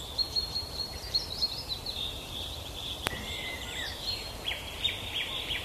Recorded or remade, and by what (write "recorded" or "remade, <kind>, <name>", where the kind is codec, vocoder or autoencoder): remade, vocoder, BigVGAN v2